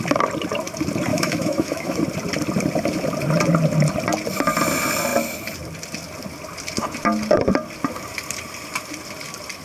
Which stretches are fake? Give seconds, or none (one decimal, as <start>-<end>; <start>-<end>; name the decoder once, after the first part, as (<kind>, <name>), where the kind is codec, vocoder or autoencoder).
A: 1.1-2.0 (autoencoder, DAC-VAE)